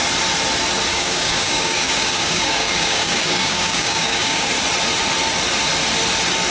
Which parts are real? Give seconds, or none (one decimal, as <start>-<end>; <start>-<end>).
0.0-0.9; 4.5-6.5